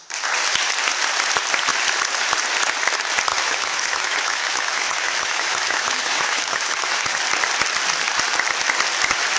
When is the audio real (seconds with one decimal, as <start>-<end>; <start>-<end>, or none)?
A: 0.0-3.3; 7.2-9.4